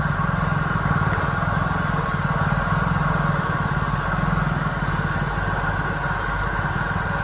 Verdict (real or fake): real